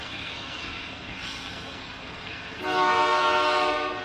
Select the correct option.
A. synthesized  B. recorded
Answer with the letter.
A